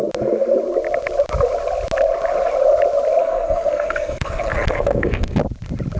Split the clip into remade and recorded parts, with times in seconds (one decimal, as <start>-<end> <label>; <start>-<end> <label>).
0.0-3.2 recorded; 3.2-5.4 remade; 5.4-6.0 recorded